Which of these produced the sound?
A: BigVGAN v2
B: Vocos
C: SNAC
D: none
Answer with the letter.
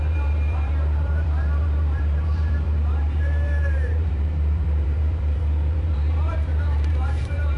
A